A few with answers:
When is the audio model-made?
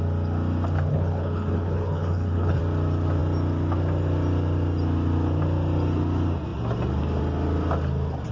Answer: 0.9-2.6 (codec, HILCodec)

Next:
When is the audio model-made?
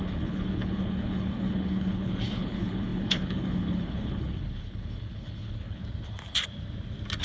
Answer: 0.0-5.8 (codec, HILCodec)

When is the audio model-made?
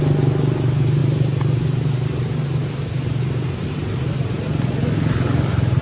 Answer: 1.0-4.5 (vocoder, BigVGAN v2)